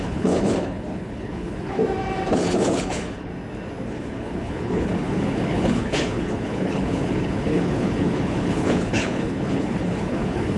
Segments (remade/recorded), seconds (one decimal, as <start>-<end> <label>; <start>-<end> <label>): 0.0-1.8 remade; 1.8-2.3 recorded; 2.3-3.3 remade; 3.3-3.9 recorded; 3.9-10.6 remade